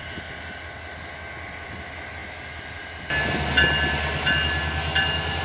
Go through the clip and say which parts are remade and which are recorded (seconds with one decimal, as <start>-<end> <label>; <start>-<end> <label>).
0.0-5.4 recorded